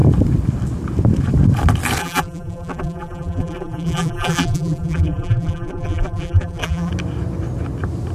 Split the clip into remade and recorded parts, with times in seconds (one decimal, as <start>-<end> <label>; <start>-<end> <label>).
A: 0.0-2.0 recorded; 2.0-6.9 remade; 6.9-8.1 recorded